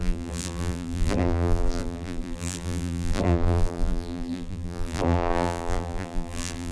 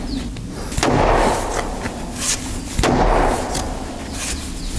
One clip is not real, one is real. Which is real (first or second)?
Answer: second